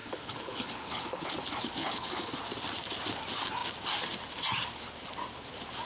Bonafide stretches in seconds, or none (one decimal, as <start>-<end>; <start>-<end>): 1.3-1.8; 2.3-5.8